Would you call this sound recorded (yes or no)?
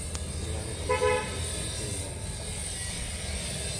yes